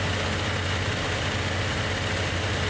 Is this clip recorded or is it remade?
recorded